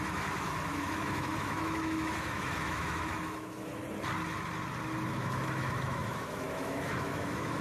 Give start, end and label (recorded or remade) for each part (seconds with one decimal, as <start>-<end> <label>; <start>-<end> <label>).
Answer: 0.0-3.8 remade; 3.8-5.1 recorded; 5.1-7.6 remade